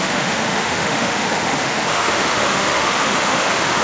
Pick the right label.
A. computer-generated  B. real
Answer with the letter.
A